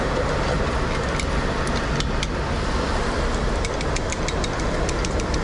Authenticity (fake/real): real